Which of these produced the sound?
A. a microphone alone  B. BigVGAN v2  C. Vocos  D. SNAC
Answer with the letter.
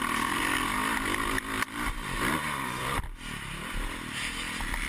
B